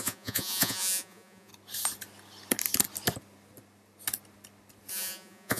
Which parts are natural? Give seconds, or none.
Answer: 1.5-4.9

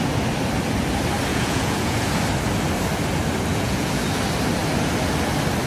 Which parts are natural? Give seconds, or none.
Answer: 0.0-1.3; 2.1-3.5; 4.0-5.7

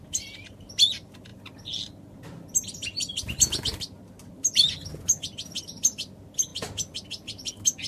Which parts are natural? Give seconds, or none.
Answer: 0.0-7.9

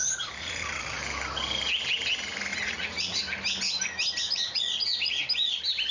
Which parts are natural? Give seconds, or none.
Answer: 1.0-2.5; 3.2-4.2; 5.2-5.9